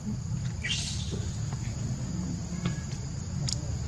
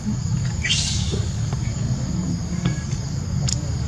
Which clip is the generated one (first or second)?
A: second